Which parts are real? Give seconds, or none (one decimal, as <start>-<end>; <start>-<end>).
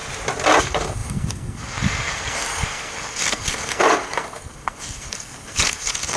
0.0-0.6